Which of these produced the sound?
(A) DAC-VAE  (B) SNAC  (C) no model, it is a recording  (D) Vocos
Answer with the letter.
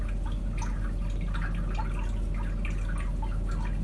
C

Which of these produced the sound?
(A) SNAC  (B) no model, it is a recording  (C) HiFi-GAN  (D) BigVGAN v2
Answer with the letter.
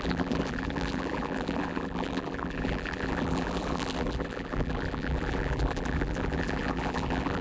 D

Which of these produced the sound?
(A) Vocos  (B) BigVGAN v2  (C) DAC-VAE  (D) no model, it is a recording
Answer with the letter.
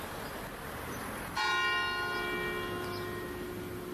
D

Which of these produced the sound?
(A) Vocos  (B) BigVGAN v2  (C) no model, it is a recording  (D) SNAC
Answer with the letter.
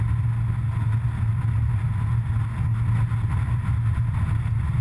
C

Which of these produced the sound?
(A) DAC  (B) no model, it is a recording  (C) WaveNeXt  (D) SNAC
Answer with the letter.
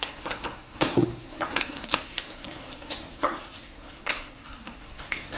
D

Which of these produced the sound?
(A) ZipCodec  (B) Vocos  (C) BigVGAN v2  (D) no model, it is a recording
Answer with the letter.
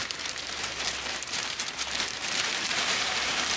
C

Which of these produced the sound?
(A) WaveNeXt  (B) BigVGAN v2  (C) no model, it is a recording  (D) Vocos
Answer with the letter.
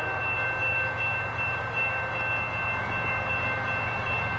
C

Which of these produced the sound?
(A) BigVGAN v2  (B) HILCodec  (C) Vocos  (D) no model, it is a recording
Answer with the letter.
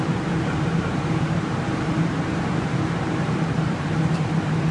A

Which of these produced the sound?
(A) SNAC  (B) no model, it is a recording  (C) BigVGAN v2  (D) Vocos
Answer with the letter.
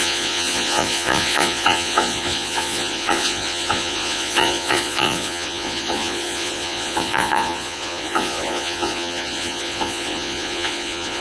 D